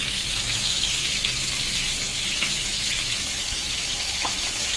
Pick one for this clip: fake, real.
fake